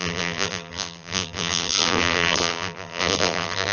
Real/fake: fake